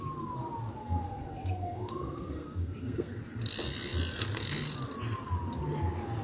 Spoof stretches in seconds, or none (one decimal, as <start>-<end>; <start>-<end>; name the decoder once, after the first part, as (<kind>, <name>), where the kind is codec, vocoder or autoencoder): 0.8-3.2 (codec, SNAC)